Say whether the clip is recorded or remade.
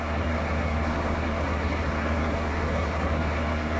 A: remade